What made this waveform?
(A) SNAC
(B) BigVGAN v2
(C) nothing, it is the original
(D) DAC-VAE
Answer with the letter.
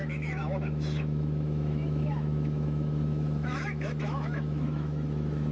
D